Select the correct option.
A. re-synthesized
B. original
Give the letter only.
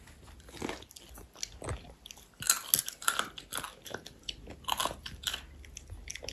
B